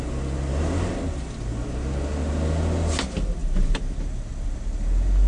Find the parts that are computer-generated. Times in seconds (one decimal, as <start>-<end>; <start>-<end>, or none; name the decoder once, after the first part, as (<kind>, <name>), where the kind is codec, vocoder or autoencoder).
none